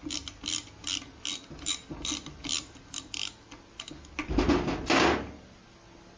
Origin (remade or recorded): recorded